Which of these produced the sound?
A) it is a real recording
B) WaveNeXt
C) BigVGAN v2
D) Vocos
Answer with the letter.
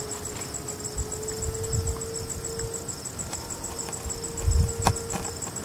A